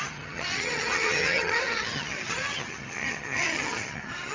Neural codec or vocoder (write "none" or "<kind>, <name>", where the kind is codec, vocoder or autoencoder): vocoder, HiFi-GAN